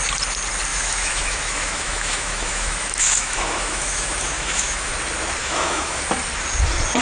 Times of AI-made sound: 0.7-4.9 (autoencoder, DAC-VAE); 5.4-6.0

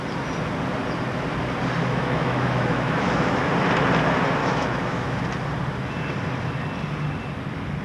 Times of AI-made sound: 1.8-3.5 (autoencoder, DAC-VAE); 4.4-5.2

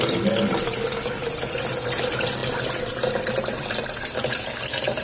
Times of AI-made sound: none

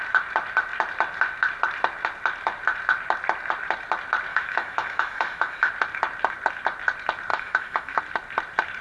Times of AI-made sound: 4.3-5.7 (autoencoder, DAC-VAE); 7.3-8.0